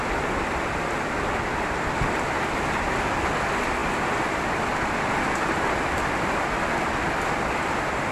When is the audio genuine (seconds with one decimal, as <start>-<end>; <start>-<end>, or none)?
0.0-8.1